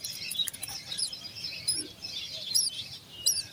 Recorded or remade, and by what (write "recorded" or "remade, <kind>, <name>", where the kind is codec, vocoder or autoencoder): remade, vocoder, BigVGAN v2